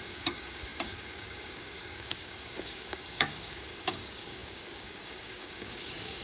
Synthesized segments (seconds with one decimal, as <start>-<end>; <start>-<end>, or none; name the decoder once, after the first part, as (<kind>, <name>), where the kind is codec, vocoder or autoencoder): 0.0-6.2 (codec, DAC)

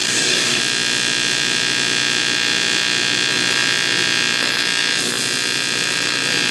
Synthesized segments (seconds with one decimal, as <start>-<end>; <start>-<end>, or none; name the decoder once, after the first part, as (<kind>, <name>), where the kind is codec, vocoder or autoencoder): 0.0-0.6 (codec, DAC)

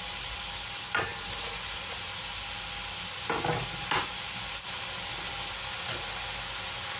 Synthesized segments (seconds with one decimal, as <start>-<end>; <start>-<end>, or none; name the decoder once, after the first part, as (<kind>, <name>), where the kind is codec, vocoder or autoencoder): none

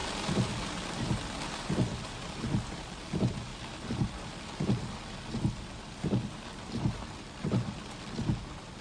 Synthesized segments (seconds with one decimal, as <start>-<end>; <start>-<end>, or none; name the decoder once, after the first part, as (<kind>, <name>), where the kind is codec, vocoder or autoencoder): none

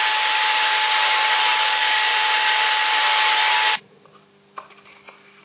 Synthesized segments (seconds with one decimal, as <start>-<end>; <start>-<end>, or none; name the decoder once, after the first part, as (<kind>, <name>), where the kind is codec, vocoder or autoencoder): 1.6-2.1 (codec, DAC)

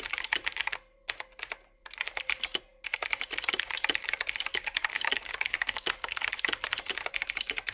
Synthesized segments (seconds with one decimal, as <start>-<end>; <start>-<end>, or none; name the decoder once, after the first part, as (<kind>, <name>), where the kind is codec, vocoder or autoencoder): 4.5-6.3 (codec, DAC)

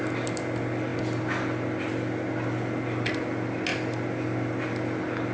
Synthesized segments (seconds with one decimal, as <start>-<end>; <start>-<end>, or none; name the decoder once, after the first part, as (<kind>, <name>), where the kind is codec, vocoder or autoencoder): none

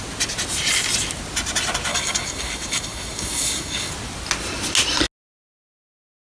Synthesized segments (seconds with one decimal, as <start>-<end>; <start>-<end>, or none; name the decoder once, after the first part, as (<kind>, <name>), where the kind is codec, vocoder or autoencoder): 1.9-3.9 (codec, DAC)